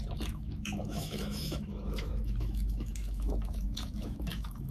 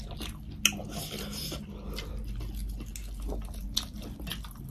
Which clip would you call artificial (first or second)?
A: first